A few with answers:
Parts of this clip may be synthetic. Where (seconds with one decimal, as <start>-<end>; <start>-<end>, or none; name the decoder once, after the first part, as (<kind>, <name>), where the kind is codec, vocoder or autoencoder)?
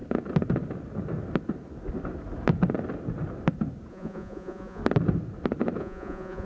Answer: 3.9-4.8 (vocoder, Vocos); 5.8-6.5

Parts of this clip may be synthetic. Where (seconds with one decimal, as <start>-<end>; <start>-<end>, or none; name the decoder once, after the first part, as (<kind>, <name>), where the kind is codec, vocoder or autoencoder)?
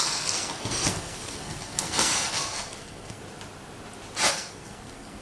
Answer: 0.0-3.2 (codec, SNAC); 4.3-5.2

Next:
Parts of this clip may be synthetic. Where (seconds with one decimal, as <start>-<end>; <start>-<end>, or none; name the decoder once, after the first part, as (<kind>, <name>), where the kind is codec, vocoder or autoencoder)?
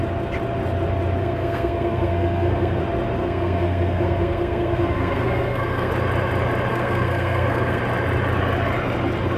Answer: 1.2-2.8 (codec, SNAC); 3.2-5.9; 6.7-7.8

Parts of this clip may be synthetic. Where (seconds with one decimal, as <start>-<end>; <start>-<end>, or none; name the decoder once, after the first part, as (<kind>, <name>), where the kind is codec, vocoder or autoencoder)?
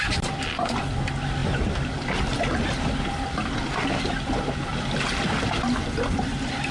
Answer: none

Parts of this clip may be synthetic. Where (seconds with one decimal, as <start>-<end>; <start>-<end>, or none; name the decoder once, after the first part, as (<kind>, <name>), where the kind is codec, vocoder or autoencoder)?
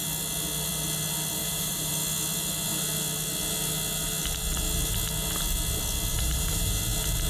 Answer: 1.4-1.9 (vocoder, BigVGAN v2); 6.1-6.8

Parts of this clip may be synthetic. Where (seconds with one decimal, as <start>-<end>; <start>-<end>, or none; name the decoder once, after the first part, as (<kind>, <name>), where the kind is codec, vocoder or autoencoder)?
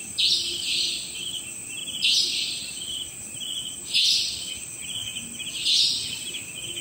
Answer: none